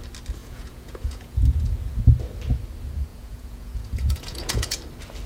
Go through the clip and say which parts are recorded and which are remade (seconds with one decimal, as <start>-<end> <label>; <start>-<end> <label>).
0.0-0.4 recorded; 0.4-2.0 remade; 2.0-3.1 recorded; 3.1-4.8 remade; 4.8-5.3 recorded